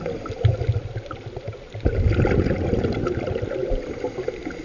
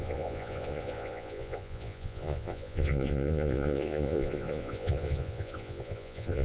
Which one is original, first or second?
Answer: first